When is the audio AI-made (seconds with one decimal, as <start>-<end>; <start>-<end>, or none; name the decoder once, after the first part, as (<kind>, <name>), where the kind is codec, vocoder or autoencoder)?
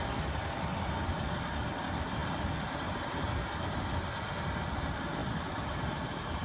none